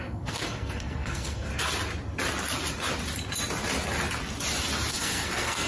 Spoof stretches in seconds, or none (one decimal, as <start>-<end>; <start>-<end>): 0.0-1.5; 4.9-5.7